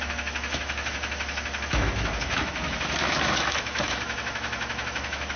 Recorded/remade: remade